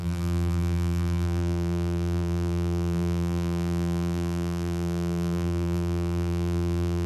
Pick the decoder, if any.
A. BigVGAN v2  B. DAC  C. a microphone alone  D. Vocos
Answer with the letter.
A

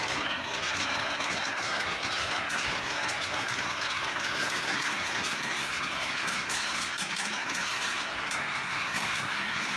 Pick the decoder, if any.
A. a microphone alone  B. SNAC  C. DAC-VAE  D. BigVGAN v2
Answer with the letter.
B